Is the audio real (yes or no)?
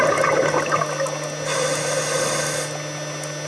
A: yes